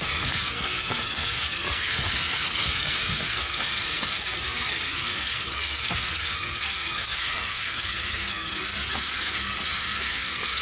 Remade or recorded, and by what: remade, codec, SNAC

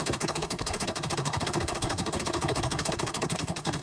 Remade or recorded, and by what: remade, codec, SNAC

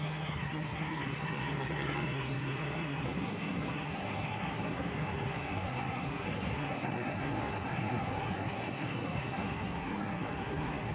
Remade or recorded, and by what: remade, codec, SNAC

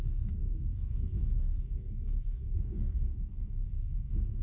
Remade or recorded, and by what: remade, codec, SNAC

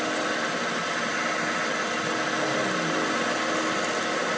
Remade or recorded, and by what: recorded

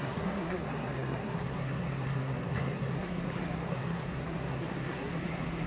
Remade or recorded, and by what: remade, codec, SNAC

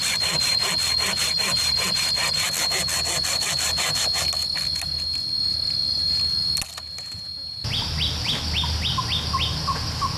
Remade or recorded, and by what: recorded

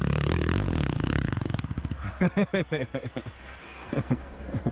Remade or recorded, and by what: remade, codec, SNAC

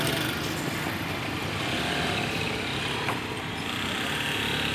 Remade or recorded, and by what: recorded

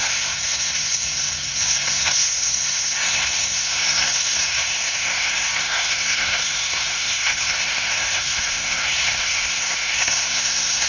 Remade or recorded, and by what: remade, codec, SNAC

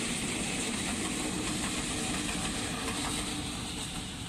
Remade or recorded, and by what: recorded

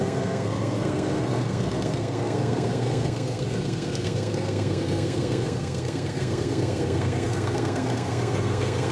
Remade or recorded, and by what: remade, codec, SNAC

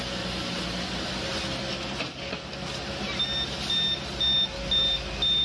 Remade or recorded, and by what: recorded